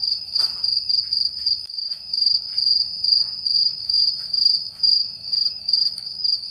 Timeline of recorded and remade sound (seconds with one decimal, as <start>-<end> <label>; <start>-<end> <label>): 0.0-0.5 remade; 0.5-1.5 recorded; 1.5-2.5 remade; 2.5-3.6 recorded; 3.6-6.5 remade